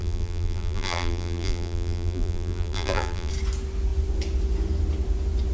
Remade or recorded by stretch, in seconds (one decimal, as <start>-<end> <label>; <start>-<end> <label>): 0.0-3.3 remade; 3.3-5.5 recorded